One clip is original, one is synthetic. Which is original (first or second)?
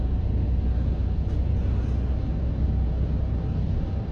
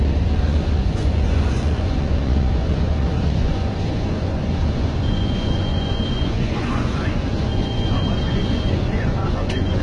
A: first